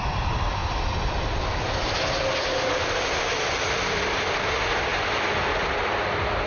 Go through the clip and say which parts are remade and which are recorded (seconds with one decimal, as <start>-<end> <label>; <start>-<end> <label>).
0.0-6.5 recorded